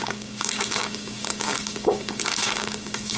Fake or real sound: fake